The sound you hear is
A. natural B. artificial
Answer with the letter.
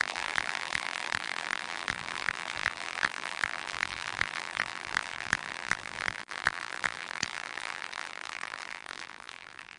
B